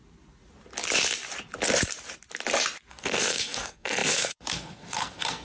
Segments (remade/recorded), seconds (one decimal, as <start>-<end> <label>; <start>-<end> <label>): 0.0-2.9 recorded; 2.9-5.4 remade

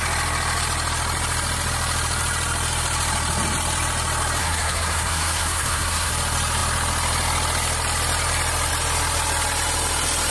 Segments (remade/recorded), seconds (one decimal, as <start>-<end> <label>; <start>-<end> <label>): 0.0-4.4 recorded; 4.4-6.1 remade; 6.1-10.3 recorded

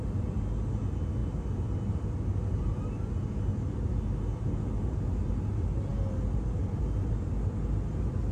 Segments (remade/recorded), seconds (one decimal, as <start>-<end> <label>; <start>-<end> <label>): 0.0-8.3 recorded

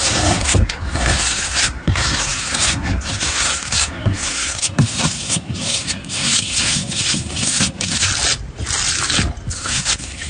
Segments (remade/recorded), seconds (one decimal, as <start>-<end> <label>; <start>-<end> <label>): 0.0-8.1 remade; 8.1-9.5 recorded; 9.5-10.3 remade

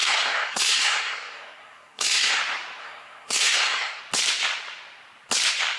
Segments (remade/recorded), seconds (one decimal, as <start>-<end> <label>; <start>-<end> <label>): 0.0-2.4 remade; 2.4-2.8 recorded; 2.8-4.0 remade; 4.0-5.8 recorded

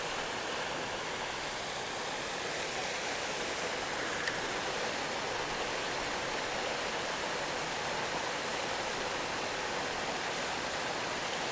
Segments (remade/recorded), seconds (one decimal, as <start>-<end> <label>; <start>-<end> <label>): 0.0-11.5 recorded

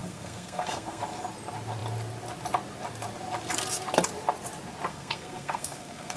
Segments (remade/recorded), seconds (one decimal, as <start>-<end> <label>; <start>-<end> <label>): 0.0-1.0 remade; 1.0-4.9 recorded; 4.9-6.2 remade